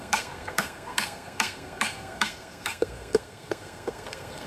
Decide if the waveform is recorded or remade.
remade